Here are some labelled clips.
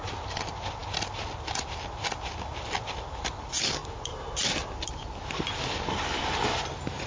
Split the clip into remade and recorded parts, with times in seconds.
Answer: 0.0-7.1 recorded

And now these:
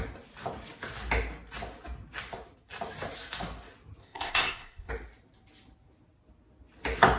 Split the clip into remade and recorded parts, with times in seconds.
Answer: 0.0-4.0 recorded; 4.0-4.9 remade; 4.9-7.2 recorded

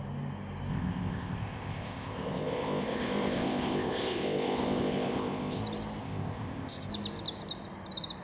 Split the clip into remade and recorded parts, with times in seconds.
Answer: 0.0-0.7 recorded; 0.7-5.6 remade; 5.6-6.0 recorded; 6.0-6.9 remade; 6.9-8.2 recorded